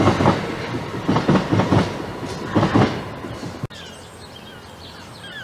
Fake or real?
real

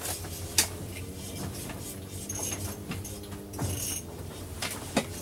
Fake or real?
real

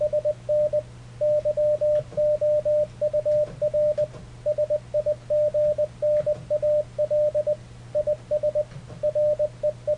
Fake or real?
real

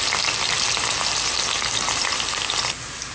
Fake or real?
real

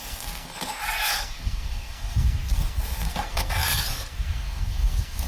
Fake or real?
fake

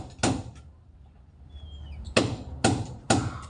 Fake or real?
real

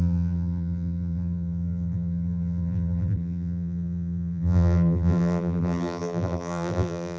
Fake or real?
fake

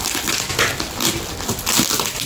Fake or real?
real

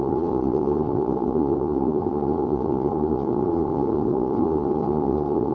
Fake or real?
fake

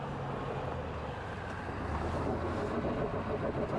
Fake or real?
real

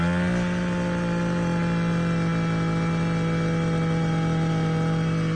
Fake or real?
real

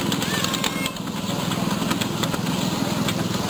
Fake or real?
real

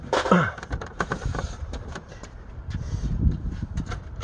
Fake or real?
fake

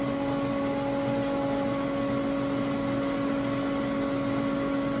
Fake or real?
real